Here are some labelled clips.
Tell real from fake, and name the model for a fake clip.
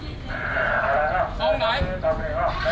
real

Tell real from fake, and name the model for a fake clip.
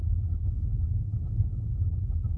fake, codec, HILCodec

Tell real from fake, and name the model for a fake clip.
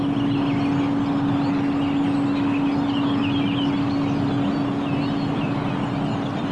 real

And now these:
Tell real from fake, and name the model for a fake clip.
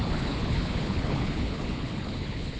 fake, codec, HILCodec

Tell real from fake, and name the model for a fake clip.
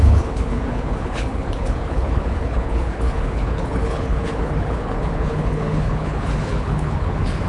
fake, codec, HILCodec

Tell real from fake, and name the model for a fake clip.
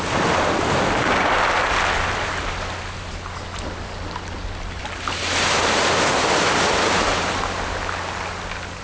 real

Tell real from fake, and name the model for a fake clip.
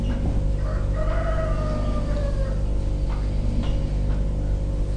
real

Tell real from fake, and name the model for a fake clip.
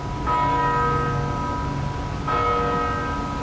real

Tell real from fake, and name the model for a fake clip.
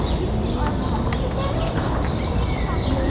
real